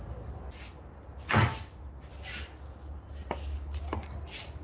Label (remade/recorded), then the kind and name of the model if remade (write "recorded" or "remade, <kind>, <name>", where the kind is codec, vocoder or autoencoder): recorded